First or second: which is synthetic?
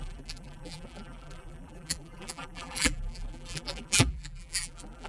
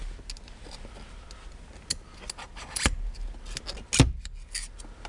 first